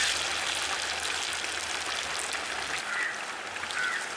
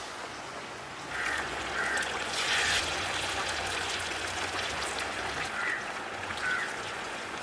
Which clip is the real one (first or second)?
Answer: first